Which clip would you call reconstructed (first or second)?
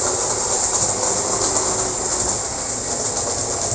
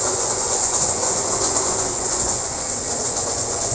second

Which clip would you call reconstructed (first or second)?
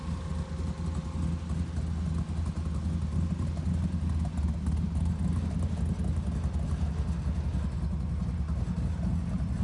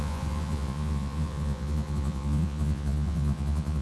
second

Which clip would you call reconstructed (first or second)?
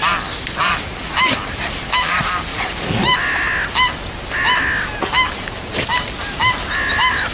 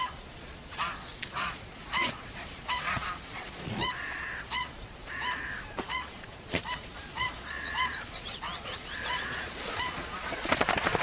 second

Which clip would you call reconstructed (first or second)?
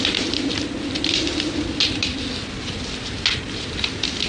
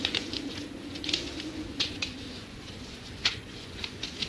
second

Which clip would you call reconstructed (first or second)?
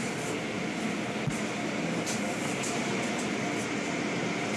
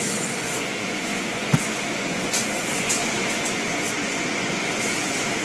second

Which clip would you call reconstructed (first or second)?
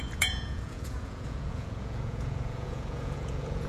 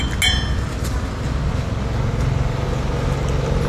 first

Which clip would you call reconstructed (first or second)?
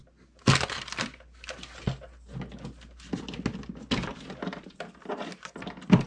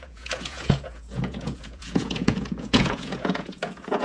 second